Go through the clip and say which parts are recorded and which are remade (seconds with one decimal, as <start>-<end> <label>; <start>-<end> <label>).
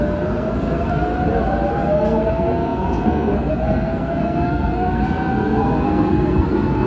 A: 0.0-1.1 remade; 1.1-1.7 recorded; 1.7-6.9 remade